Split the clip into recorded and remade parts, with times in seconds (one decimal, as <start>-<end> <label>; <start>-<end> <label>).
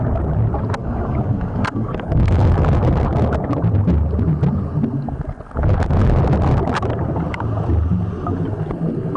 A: 0.0-0.8 recorded; 0.8-2.8 remade; 2.8-9.2 recorded